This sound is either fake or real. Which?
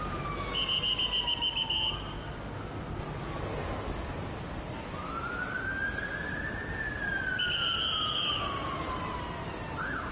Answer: real